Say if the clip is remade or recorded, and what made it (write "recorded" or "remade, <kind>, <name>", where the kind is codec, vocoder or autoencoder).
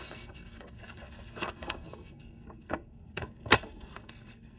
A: remade, codec, SNAC